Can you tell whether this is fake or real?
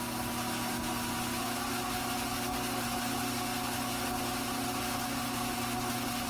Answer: real